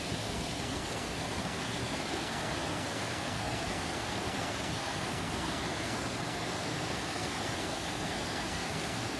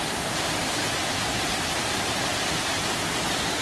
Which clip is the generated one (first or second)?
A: first